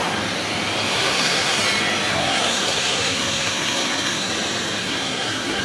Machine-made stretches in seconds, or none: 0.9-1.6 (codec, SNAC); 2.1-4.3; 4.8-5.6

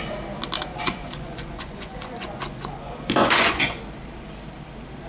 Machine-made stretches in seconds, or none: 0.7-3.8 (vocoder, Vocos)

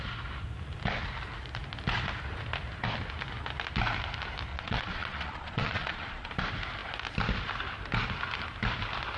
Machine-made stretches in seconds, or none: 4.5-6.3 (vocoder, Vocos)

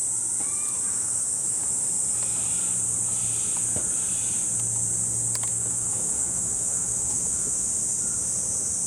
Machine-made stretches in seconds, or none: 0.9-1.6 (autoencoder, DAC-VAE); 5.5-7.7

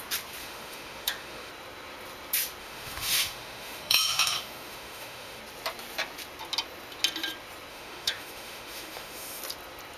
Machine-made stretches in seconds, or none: 0.4-1.5 (autoencoder, DAC-VAE); 2.6-5.4; 7.7-9.4

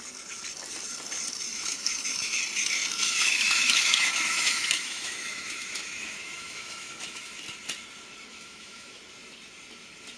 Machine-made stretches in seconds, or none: 1.5-2.4 (autoencoder, DAC-VAE); 3.0-7.4; 8.3-9.0

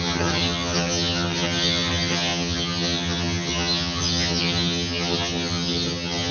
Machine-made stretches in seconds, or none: 0.0-6.3 (vocoder, HiFi-GAN)

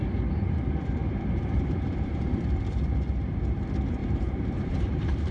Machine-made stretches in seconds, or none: 1.0-2.6 (vocoder, BigVGAN v2); 4.0-5.3